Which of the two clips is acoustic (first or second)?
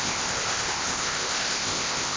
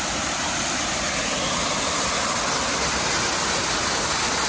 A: second